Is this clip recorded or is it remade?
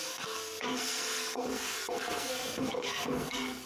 remade